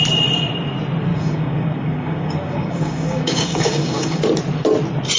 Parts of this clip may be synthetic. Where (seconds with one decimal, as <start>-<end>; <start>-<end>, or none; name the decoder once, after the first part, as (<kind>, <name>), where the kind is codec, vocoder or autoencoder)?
1.1-4.2 (codec, DAC)

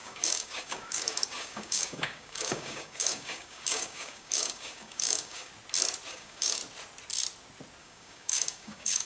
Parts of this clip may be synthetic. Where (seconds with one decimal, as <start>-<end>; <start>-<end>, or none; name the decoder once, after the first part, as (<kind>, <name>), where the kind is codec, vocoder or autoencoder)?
0.0-5.5 (codec, DAC); 6.1-6.6; 7.8-9.1

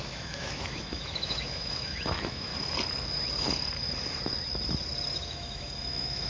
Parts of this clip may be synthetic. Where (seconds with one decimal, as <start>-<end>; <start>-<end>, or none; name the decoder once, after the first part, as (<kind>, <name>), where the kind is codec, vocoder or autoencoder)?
0.0-2.5 (autoencoder, DAC-VAE); 5.1-6.3

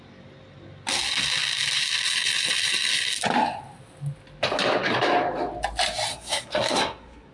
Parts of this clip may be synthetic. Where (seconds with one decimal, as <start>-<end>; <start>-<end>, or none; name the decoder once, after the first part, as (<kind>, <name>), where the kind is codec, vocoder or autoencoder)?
6.1-7.3 (codec, SNAC)

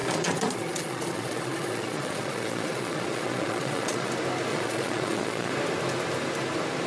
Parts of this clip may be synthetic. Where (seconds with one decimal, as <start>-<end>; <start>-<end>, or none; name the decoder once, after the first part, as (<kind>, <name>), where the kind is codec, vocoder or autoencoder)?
0.0-4.1 (vocoder, Vocos); 4.5-5.5